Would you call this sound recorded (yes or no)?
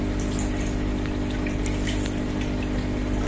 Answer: yes